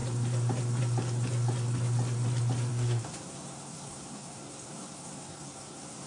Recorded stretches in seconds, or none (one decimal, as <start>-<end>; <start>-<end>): 0.0-2.7